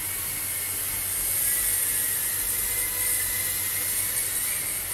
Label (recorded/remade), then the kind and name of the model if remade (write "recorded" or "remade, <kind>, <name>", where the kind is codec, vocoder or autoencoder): recorded